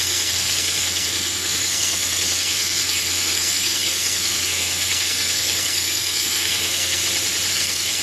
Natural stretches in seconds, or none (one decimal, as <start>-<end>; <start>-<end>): 7.0-7.5